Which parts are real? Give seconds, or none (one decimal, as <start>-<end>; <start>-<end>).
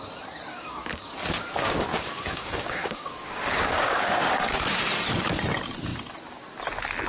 0.0-0.5; 1.1-1.9; 4.8-7.1